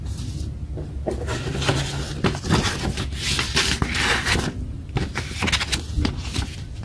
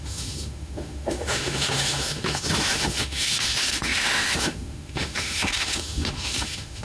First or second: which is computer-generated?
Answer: second